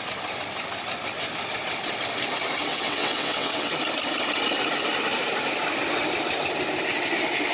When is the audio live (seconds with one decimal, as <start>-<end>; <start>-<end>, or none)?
0.0-2.7; 3.7-7.5